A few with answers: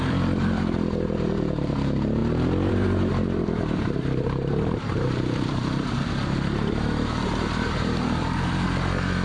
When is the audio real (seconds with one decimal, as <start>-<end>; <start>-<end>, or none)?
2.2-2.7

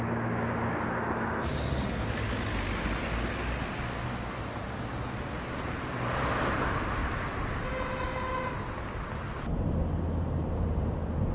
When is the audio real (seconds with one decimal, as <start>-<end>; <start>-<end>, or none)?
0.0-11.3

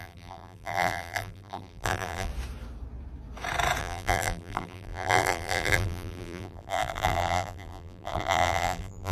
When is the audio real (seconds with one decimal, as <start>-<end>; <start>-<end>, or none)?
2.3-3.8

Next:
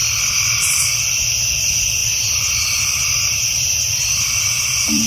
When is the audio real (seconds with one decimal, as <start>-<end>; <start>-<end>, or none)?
0.0-2.0; 2.5-3.0